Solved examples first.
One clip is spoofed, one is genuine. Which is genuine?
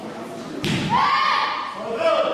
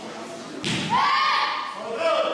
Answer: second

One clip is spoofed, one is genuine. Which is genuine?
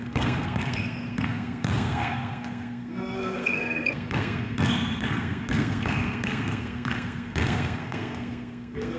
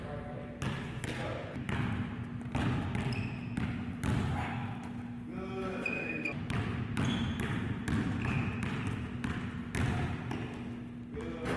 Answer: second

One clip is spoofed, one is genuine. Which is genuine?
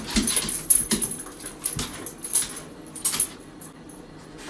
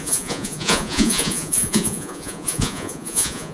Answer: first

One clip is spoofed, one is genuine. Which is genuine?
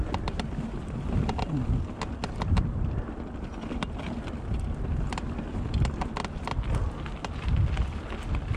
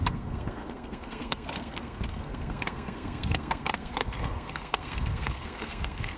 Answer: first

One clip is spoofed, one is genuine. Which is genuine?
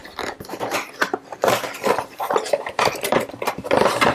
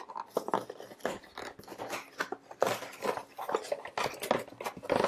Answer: second